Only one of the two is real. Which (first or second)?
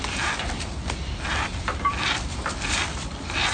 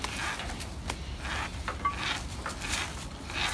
second